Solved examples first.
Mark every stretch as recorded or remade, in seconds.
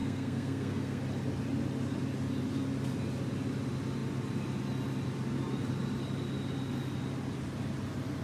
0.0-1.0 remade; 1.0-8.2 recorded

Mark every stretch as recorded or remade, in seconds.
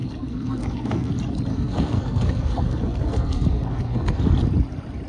0.0-1.1 remade; 1.1-1.5 recorded; 1.5-4.2 remade; 4.2-5.1 recorded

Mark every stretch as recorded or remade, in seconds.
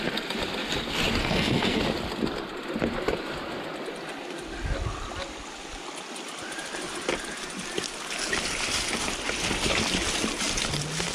0.0-1.2 recorded; 1.2-1.8 remade; 1.8-11.1 recorded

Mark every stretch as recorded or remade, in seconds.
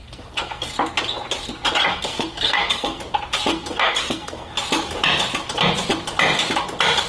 0.0-0.7 remade; 0.7-1.9 recorded; 1.9-3.0 remade; 3.0-3.5 recorded; 3.5-4.5 remade; 4.5-7.1 recorded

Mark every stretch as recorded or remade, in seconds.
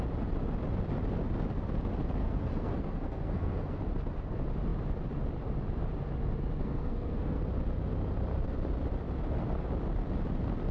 0.0-2.2 recorded; 2.2-3.8 remade; 3.8-6.6 recorded; 6.6-7.4 remade; 7.4-10.7 recorded